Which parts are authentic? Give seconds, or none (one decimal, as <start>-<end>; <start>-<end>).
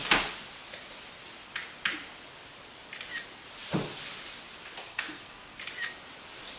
0.0-4.9; 5.6-6.6